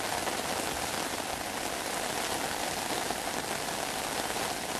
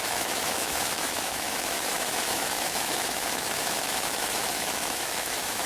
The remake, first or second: second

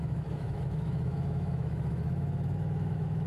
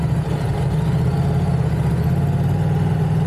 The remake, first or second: first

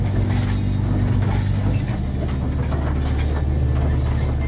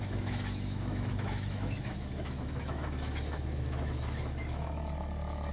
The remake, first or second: second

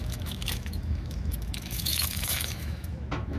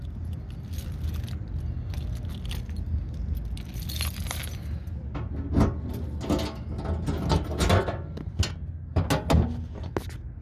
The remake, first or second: first